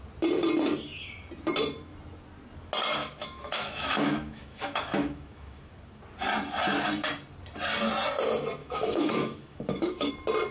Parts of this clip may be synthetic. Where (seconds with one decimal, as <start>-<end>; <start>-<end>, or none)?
3.0-5.7; 8.6-10.1